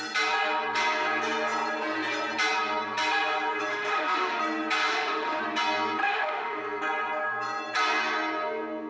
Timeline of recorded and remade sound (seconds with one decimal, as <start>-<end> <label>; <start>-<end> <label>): 0.0-3.7 recorded; 3.7-4.4 remade; 4.4-4.9 recorded; 4.9-5.4 remade; 5.4-6.0 recorded; 6.0-6.6 remade; 6.6-8.9 recorded